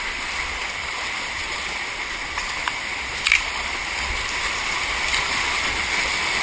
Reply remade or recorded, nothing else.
recorded